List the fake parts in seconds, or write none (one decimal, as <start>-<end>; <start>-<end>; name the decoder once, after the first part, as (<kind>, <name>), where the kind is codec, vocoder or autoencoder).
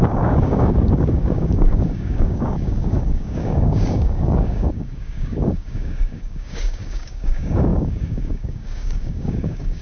0.0-9.8 (codec, DAC)